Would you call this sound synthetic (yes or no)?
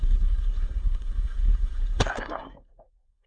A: yes